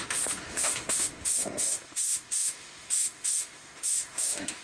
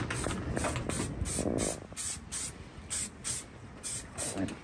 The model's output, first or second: first